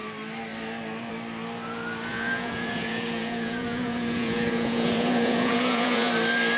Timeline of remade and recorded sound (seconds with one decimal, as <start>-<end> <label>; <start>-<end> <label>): 0.0-2.1 recorded; 2.1-6.1 remade; 6.1-6.6 recorded